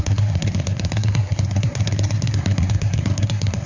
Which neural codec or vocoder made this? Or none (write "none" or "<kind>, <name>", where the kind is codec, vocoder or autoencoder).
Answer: codec, SNAC